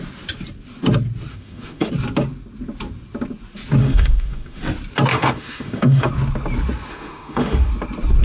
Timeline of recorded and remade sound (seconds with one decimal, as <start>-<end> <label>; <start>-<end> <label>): 0.0-1.3 recorded; 1.3-1.9 remade; 1.9-3.8 recorded; 3.8-4.6 remade; 4.6-5.1 recorded; 5.1-6.1 remade; 6.1-6.9 recorded; 6.9-7.7 remade; 7.7-8.2 recorded